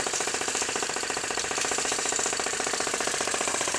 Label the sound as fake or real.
fake